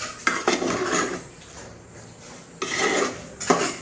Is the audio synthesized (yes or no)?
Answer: no